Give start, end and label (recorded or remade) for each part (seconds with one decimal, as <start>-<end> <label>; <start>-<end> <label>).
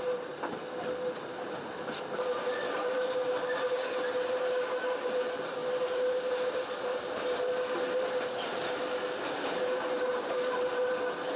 0.0-11.4 recorded